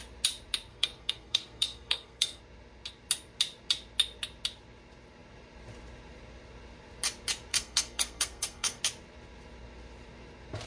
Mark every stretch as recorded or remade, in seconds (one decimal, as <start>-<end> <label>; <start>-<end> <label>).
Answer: 0.0-0.7 recorded; 0.7-2.4 remade; 2.4-7.5 recorded; 7.5-8.8 remade; 8.8-10.7 recorded